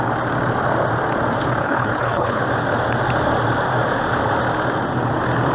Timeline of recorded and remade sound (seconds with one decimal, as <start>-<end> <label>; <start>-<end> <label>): 0.0-1.6 recorded; 1.6-2.4 remade; 2.4-5.5 recorded